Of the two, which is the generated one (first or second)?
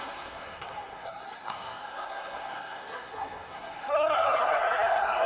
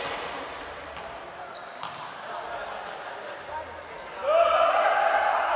first